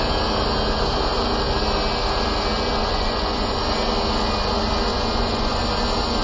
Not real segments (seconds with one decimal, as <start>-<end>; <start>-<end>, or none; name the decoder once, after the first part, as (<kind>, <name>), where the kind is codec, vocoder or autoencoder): 2.8-3.6 (vocoder, Vocos); 4.9-5.6